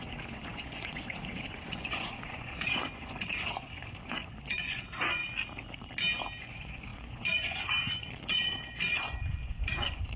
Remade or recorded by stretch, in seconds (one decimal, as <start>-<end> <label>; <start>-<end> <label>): 0.0-5.2 remade; 5.2-6.4 recorded; 6.4-10.2 remade